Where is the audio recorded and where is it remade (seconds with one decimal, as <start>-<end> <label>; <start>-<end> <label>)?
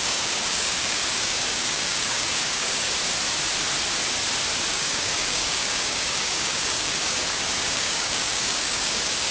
0.0-2.9 remade; 2.9-4.7 recorded; 4.7-9.3 remade